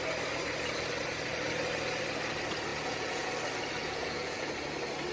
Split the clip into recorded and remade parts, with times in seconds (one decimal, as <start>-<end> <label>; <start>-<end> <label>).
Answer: 0.0-2.7 recorded; 2.7-3.3 remade; 3.3-3.8 recorded; 3.8-4.5 remade; 4.5-5.1 recorded